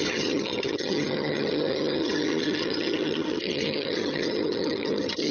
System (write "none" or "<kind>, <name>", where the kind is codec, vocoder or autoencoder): vocoder, HiFi-GAN